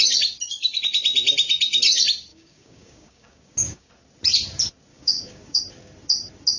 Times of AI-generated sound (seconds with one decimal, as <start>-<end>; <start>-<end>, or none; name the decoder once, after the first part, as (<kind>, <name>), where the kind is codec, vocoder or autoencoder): 2.3-3.9 (codec, DAC); 4.9-5.6